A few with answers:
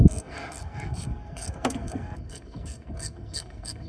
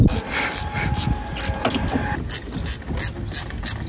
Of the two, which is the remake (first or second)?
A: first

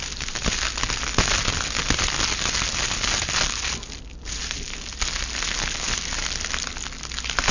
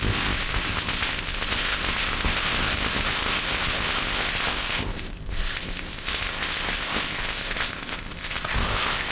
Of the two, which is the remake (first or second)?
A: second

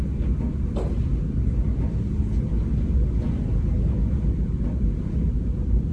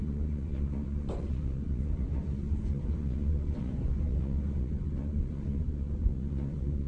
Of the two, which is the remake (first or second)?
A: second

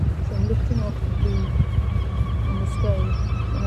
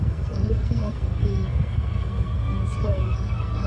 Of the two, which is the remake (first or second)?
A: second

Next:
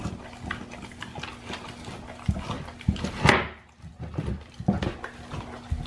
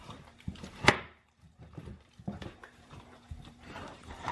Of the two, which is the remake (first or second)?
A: second